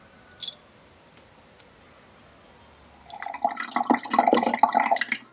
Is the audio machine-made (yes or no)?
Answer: no